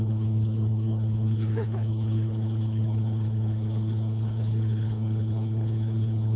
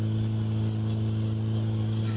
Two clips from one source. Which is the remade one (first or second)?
first